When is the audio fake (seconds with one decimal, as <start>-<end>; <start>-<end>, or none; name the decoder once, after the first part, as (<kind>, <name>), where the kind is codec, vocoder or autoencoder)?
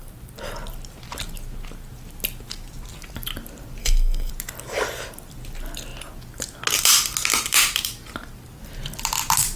3.8-4.3 (codec, SNAC)